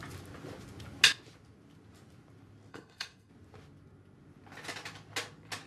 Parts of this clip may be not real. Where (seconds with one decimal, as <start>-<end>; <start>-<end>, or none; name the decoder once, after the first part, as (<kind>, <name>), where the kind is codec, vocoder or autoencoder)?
2.7-3.3 (codec, SNAC)